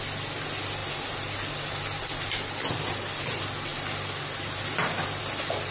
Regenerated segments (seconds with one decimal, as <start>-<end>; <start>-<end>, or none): none